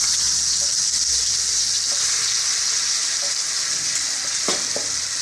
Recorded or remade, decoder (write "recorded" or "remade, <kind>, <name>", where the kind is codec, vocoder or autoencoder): recorded